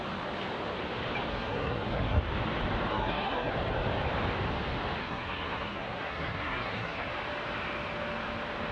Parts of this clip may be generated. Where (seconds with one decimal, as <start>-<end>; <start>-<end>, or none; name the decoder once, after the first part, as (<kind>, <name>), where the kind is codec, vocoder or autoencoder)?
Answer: 1.3-2.2 (codec, SNAC); 2.9-3.5; 5.0-7.1